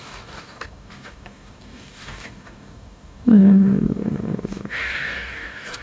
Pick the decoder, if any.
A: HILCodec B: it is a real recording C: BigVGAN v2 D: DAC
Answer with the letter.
D